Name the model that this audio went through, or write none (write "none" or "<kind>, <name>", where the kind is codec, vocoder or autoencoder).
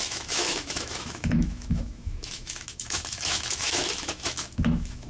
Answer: autoencoder, DAC-VAE